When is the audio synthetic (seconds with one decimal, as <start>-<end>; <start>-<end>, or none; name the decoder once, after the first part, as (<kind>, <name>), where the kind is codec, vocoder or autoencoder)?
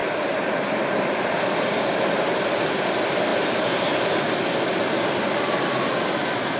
none